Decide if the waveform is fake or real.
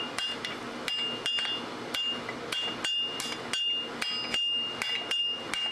real